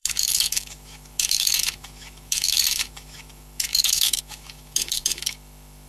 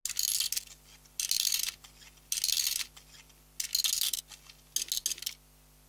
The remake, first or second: first